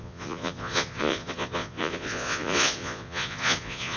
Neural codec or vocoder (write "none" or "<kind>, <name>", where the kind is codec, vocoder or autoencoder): vocoder, Vocos